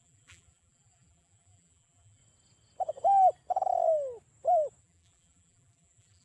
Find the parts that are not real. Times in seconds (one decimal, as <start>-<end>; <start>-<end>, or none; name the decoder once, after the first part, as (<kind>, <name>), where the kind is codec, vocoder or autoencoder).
0.0-2.2 (vocoder, BigVGAN v2); 4.8-6.2